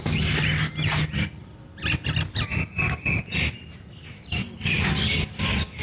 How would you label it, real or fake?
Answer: real